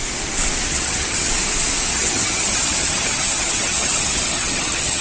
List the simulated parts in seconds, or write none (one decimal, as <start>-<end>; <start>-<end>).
0.7-1.3; 1.9-5.0

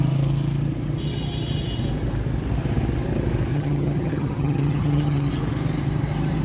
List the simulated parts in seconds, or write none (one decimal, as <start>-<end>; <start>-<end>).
3.5-5.3